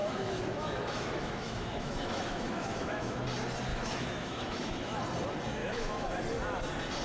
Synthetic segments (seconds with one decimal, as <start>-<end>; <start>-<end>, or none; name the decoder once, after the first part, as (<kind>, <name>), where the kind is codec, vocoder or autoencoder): 0.0-3.2 (autoencoder, DAC-VAE); 3.7-5.0; 5.6-6.2